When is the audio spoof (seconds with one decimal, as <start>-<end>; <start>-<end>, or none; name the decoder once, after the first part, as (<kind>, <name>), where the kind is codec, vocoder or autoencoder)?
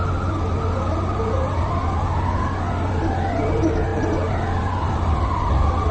none